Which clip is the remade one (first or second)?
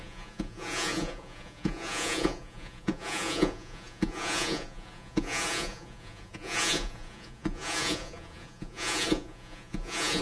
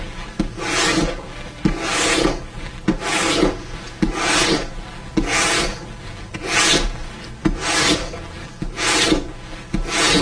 first